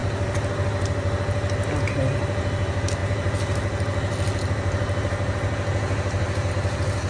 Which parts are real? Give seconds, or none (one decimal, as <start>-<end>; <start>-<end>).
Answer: 0.0-7.1